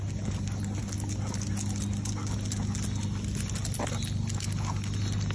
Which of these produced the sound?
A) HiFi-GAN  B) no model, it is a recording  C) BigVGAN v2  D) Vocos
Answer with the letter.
B